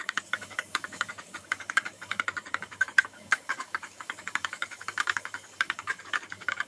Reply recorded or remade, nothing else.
remade